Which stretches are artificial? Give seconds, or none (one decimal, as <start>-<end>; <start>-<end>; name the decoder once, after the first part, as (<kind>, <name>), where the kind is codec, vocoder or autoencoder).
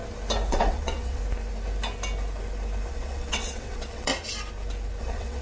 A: 0.5-1.2 (vocoder, WaveNeXt); 2.9-4.1; 5.0-5.4